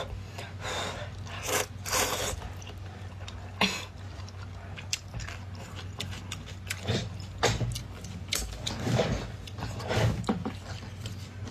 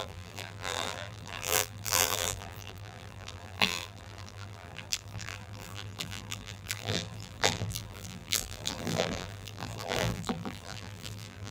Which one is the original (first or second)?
first